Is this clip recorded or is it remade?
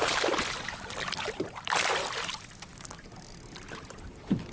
recorded